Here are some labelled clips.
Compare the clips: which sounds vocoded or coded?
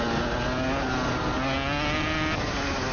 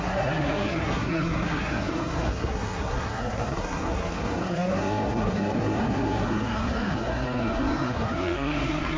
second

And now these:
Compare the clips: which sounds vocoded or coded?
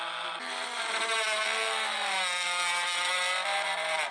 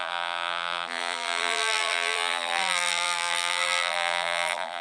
second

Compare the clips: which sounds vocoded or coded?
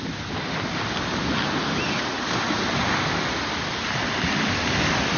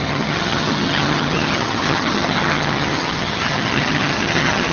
second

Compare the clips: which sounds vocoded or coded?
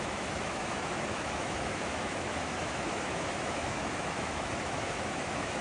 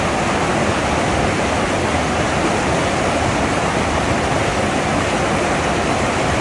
first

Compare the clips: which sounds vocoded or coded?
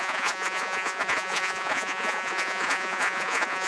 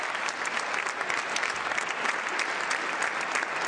first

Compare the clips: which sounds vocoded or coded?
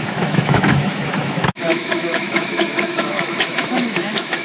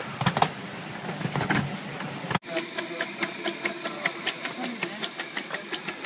first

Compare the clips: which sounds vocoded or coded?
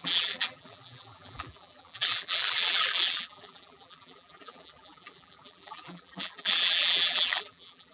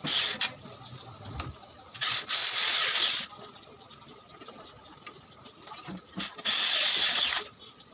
first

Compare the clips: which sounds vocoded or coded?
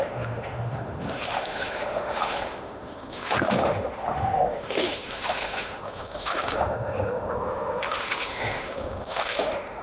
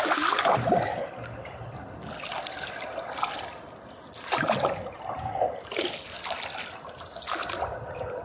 first